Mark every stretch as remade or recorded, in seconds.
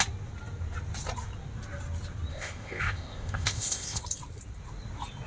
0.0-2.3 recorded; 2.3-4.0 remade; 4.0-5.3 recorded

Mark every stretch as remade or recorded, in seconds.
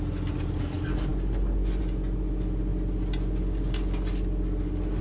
0.0-5.0 recorded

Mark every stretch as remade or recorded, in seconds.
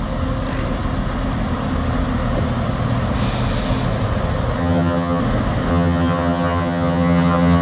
0.0-4.6 recorded; 4.6-5.2 remade; 5.2-5.7 recorded; 5.7-7.6 remade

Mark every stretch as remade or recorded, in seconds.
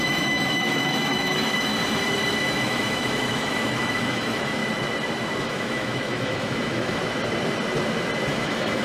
0.0-1.7 remade; 1.7-2.4 recorded; 2.4-4.6 remade; 4.6-5.4 recorded; 5.4-7.0 remade; 7.0-8.3 recorded; 8.3-8.8 remade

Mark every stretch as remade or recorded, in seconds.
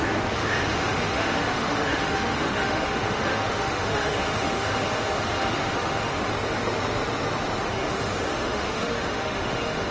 0.0-6.3 remade; 6.3-7.6 recorded; 7.6-9.9 remade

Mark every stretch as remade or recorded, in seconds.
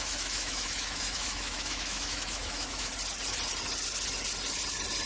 0.0-2.9 remade; 2.9-5.1 recorded